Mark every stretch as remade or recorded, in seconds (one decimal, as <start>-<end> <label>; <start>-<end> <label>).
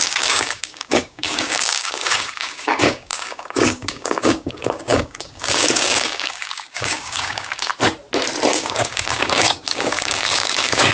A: 0.0-7.7 remade; 7.7-8.5 recorded; 8.5-10.9 remade